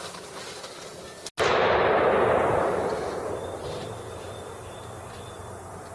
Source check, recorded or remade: recorded